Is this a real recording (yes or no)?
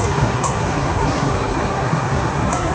no